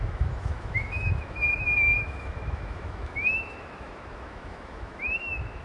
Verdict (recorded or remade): remade